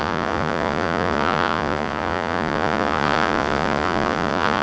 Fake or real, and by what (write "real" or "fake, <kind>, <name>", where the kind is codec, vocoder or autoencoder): fake, vocoder, Vocos